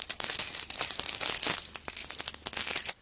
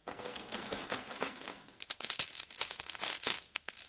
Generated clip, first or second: second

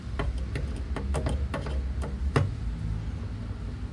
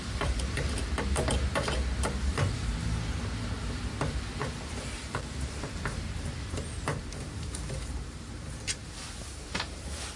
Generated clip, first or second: second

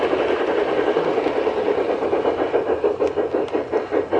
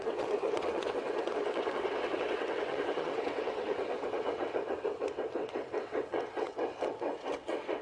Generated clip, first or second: second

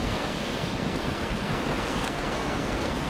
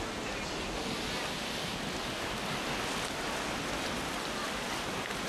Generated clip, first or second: first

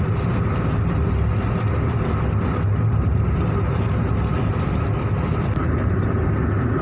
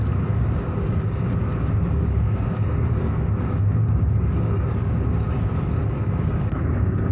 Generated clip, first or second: second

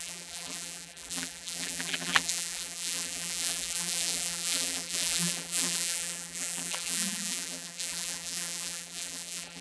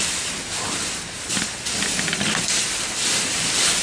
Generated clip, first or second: first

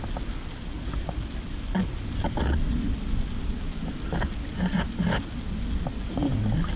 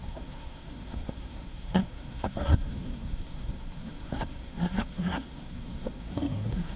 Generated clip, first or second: second